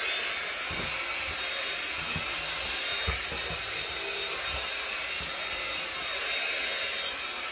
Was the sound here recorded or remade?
recorded